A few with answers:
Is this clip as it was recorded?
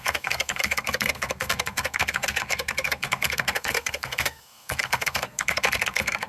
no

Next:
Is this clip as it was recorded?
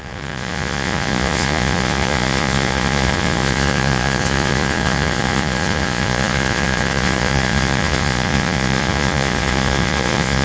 no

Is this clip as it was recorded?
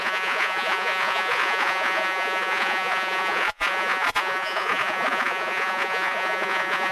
no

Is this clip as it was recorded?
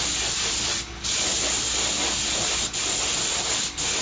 yes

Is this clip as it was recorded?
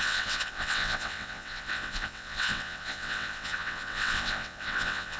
no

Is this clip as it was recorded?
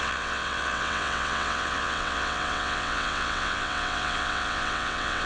no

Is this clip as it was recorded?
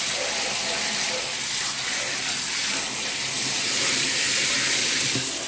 yes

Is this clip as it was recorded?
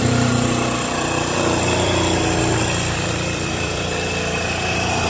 no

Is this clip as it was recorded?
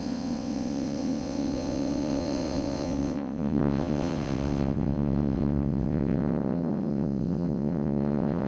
no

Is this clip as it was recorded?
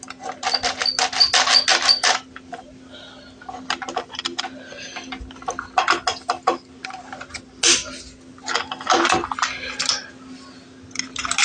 yes